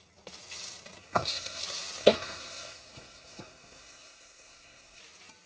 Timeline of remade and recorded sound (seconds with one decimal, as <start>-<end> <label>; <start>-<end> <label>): 0.0-1.0 recorded; 1.0-1.6 remade; 1.6-2.0 recorded; 2.0-5.0 remade; 5.0-5.5 recorded